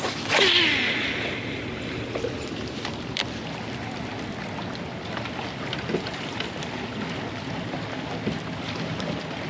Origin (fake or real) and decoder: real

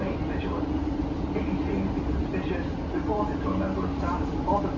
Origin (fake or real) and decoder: real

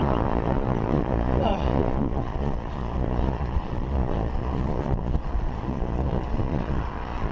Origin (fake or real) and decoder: fake, vocoder, Vocos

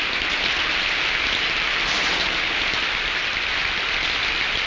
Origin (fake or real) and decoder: real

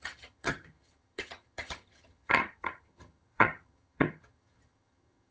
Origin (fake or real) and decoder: fake, vocoder, HiFi-GAN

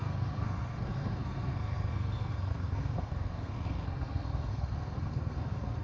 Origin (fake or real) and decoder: fake, codec, SNAC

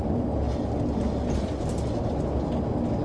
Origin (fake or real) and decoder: real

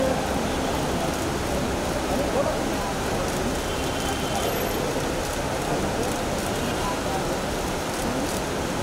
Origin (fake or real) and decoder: real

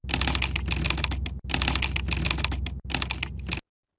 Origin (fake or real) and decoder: real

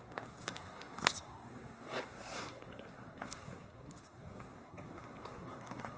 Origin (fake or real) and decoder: fake, codec, SNAC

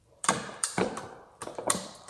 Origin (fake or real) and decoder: fake, vocoder, BigVGAN v2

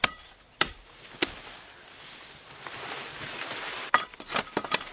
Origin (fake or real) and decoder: real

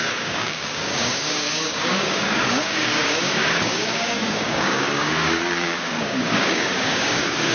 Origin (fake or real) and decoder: fake, codec, DAC